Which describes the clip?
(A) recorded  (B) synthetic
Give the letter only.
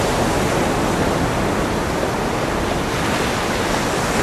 A